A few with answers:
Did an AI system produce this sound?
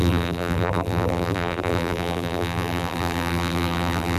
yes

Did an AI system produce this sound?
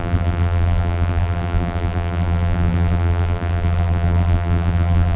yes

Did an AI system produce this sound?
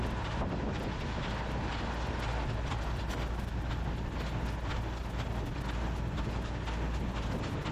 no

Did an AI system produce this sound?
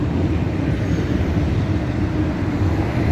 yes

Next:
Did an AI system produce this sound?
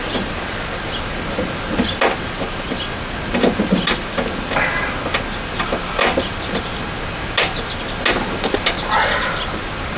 no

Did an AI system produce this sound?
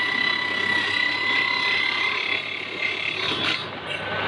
no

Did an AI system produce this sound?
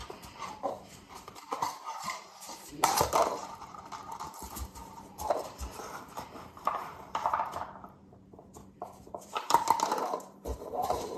yes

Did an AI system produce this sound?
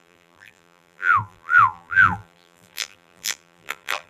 yes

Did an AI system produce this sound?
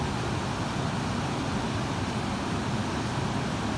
no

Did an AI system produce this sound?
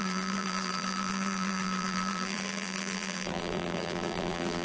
yes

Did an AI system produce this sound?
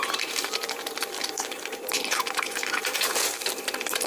yes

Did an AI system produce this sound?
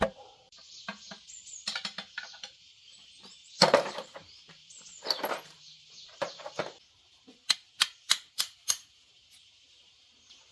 yes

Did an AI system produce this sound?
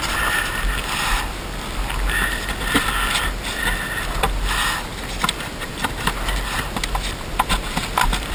no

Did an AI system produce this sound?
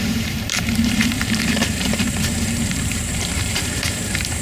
yes